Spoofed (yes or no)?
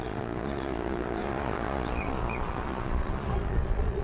yes